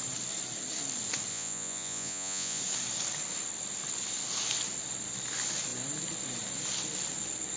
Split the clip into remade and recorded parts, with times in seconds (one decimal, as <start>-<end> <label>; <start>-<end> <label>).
0.0-1.3 recorded; 1.3-2.6 remade; 2.6-7.6 recorded